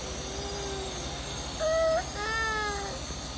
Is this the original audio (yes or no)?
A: yes